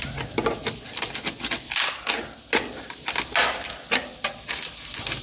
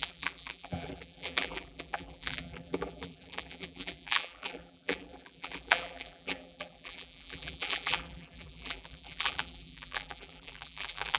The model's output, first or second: second